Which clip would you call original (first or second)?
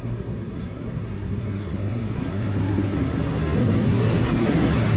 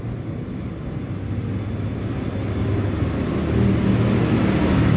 second